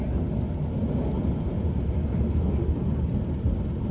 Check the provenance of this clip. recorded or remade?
recorded